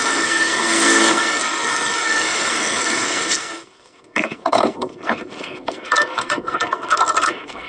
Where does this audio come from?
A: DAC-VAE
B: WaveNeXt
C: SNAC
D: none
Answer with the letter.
C